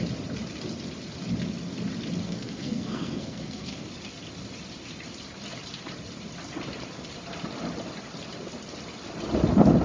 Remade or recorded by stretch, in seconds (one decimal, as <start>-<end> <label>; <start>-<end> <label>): 0.0-2.2 recorded; 2.2-3.9 remade; 3.9-9.8 recorded